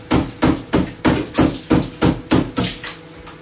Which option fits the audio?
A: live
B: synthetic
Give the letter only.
A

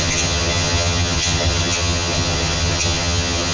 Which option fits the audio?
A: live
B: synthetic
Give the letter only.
B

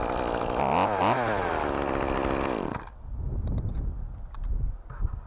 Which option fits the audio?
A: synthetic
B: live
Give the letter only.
B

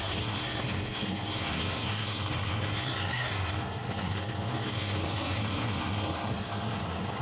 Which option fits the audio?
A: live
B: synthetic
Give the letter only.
B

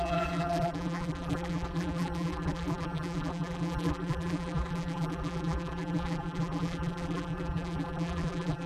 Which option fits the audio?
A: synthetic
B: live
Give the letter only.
A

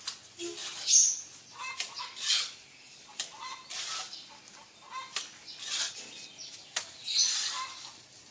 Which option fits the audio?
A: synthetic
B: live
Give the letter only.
B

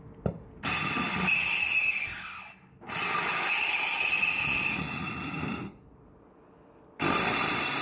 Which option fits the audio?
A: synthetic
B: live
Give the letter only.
B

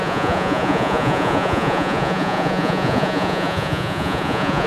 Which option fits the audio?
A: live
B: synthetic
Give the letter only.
B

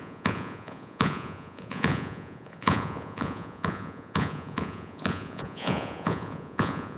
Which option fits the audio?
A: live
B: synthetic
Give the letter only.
B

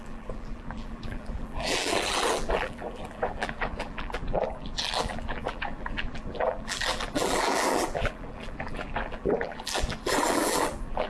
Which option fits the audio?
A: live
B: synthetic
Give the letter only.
B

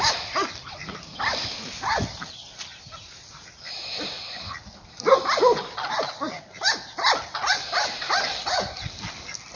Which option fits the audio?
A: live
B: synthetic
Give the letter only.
A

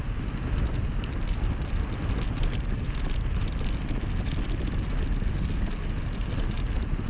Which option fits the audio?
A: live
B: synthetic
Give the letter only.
A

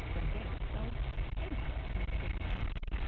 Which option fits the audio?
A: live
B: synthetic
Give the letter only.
A